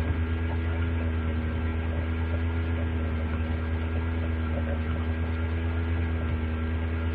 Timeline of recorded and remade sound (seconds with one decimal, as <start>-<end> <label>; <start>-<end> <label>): 0.0-7.1 recorded